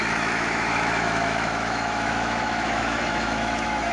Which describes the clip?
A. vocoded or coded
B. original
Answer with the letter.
A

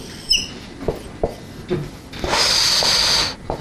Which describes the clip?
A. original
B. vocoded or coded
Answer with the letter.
A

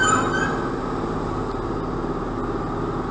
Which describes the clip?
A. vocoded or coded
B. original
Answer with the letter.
B